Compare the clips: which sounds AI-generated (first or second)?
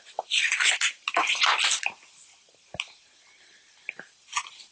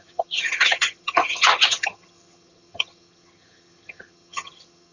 second